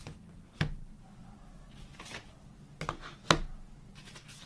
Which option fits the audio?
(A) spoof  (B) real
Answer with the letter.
B